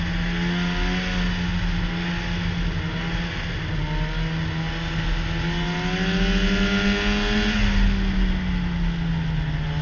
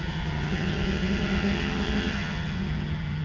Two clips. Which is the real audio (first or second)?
first